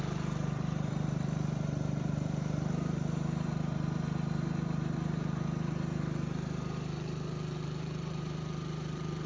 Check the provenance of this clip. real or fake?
fake